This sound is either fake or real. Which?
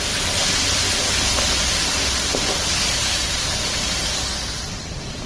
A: real